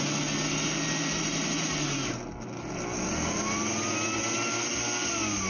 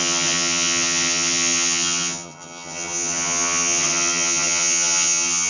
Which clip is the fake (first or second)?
second